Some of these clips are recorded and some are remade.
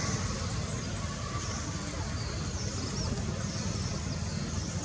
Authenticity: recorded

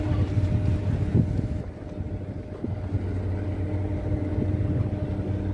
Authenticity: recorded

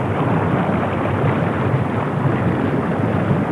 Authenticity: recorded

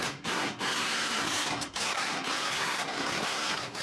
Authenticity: remade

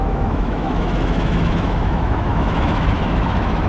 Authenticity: remade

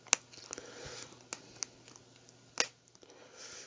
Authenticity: recorded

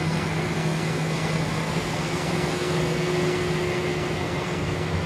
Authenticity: remade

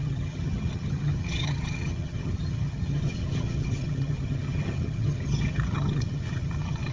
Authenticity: remade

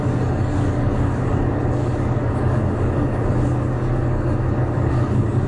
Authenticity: remade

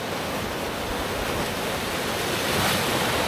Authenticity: recorded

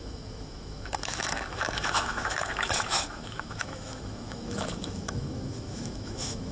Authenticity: remade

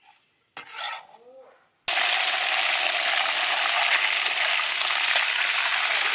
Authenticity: recorded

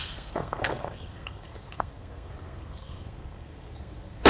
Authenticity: remade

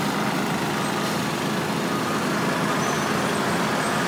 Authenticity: recorded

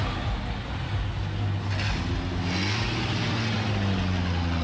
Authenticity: recorded